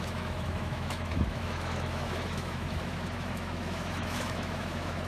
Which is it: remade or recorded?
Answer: remade